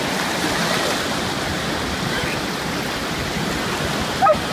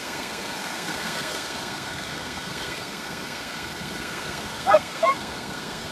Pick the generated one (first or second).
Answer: second